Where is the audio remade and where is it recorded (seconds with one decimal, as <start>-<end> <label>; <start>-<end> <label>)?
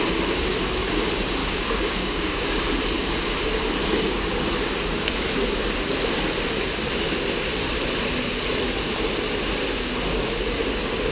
0.0-1.4 recorded; 1.4-2.7 remade; 2.7-3.8 recorded; 3.8-4.5 remade; 4.5-11.1 recorded